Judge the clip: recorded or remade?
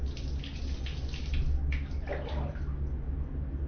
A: recorded